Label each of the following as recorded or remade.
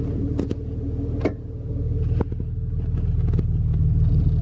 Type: recorded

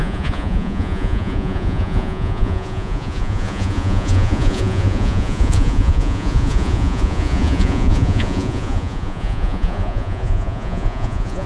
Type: remade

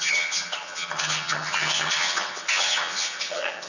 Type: remade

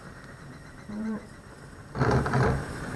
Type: remade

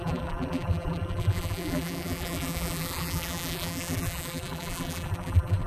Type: remade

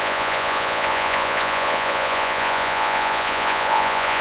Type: remade